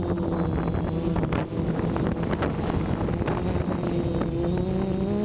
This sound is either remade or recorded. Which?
recorded